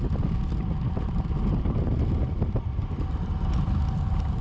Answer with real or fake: real